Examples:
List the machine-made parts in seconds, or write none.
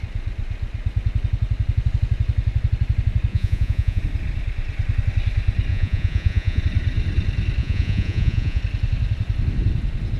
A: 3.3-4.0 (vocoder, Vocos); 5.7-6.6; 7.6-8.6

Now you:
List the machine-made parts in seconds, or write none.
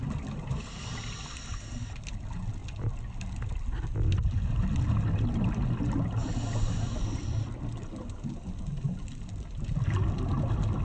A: none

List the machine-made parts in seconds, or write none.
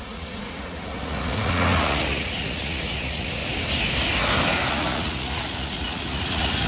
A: 0.0-3.4 (vocoder, Vocos); 4.7-6.7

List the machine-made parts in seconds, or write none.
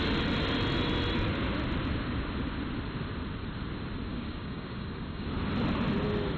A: 4.1-5.3 (codec, DAC)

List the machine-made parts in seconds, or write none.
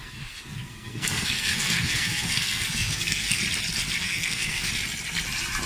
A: 0.0-3.4 (codec, SNAC); 4.0-4.7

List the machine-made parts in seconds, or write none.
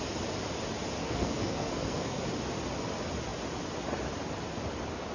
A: 1.0-2.2 (codec, SNAC)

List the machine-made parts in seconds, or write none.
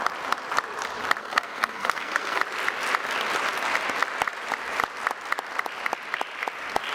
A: 1.2-2.4 (codec, SNAC)